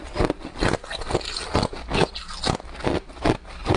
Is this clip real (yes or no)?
yes